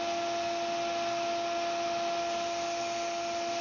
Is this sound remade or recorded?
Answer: recorded